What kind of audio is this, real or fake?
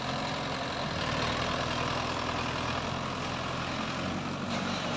real